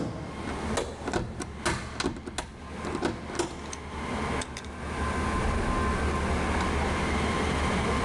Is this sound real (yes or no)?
yes